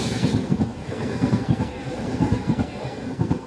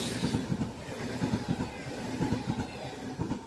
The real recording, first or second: second